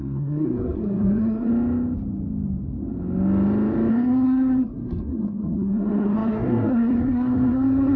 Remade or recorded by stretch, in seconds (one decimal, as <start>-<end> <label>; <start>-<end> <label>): 0.0-1.5 remade; 1.5-3.9 recorded; 3.9-8.0 remade